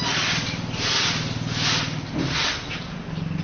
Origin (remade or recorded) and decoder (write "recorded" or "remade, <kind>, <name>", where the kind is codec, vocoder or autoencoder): recorded